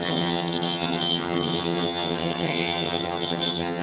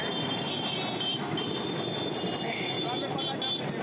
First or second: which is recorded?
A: second